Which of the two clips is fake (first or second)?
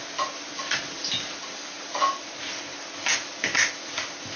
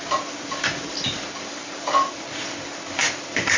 second